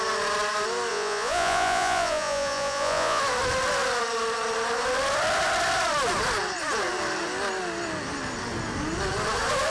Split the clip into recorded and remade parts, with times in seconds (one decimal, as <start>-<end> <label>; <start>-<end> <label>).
0.0-0.9 recorded; 0.9-3.2 remade; 3.2-9.7 recorded